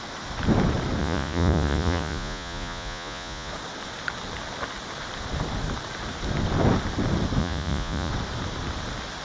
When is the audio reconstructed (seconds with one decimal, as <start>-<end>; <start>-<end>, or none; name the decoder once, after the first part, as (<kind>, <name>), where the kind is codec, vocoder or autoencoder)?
1.0-3.5 (vocoder, Vocos); 7.4-8.1